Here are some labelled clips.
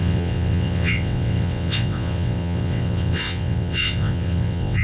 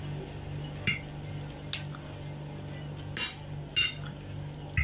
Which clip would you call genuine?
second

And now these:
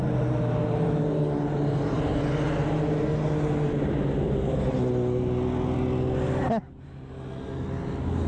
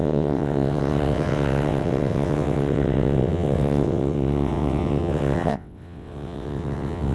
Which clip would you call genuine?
first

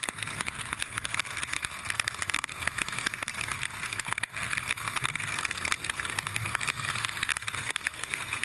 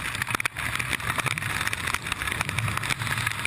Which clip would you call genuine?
second